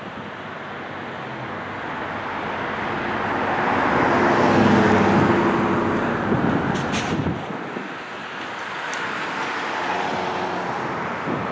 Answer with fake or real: real